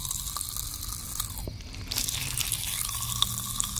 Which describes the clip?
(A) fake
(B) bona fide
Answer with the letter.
B